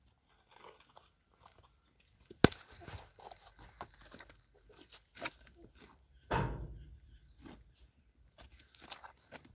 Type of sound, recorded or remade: recorded